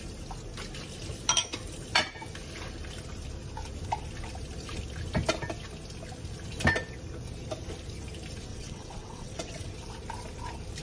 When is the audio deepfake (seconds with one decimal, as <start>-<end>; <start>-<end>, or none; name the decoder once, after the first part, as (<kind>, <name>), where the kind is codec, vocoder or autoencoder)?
8.5-9.7 (vocoder, WaveNeXt)